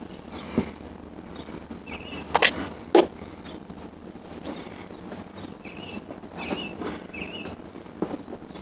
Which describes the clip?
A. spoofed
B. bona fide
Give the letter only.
B